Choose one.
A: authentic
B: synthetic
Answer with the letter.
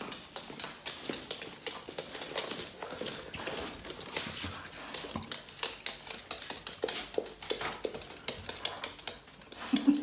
A